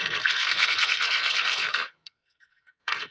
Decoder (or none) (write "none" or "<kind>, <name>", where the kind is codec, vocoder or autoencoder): codec, SNAC